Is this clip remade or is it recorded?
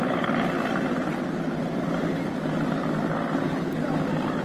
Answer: recorded